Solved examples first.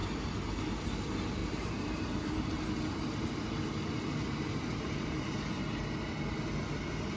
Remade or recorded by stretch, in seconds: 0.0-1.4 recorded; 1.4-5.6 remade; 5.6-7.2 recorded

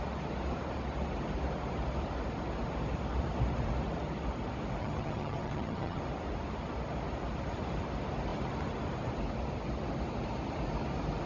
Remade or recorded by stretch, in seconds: 0.0-4.8 recorded; 4.8-6.0 remade; 6.0-11.3 recorded